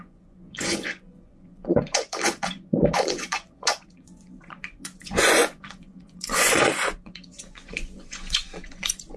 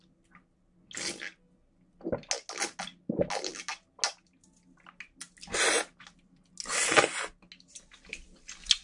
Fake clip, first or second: first